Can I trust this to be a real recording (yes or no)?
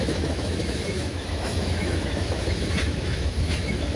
no